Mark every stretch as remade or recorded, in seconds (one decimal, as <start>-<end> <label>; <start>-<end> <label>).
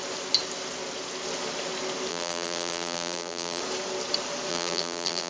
0.0-2.1 recorded; 2.1-3.6 remade; 3.6-4.5 recorded; 4.5-5.3 remade